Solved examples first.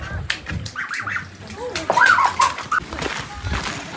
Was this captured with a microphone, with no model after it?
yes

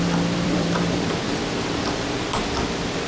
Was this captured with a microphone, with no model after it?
no